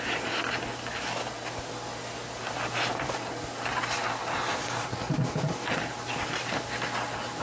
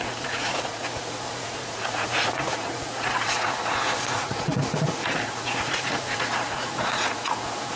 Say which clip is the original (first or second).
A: first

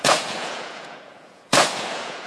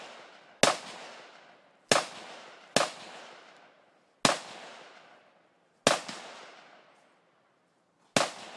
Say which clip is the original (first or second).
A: second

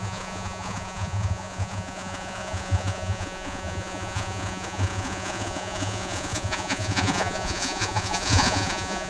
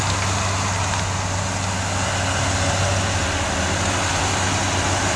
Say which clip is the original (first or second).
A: second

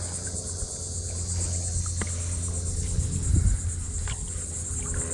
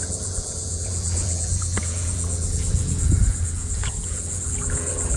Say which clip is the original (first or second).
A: first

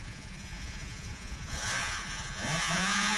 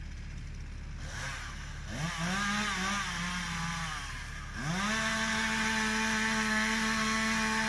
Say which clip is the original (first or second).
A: second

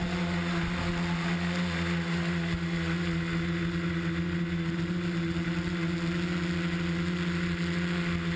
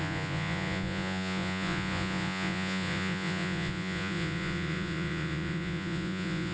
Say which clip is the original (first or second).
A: first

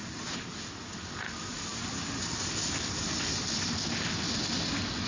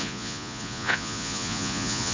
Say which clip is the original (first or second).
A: first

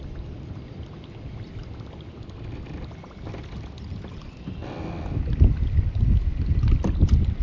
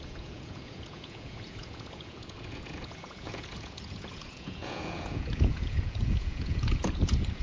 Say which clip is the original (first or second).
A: first